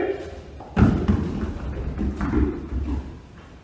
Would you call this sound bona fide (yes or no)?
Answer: yes